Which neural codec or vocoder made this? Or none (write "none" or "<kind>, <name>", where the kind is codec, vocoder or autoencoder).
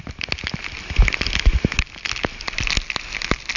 none